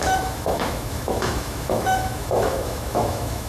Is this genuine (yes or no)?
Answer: no